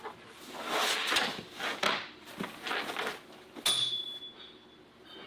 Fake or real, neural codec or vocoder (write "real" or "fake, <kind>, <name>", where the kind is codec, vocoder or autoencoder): real